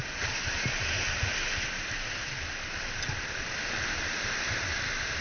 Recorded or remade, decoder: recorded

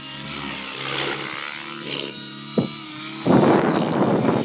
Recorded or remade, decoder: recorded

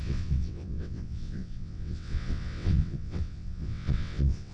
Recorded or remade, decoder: remade, vocoder, WaveNeXt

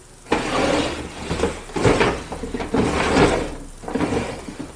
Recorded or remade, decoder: recorded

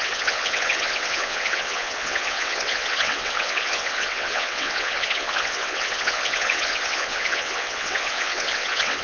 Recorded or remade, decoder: remade, vocoder, WaveNeXt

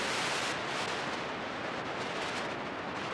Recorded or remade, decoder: recorded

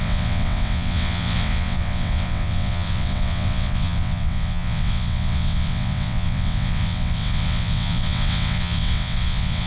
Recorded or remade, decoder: remade, vocoder, WaveNeXt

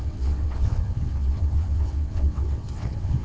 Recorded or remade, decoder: remade, vocoder, WaveNeXt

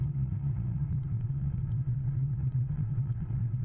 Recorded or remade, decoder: remade, vocoder, WaveNeXt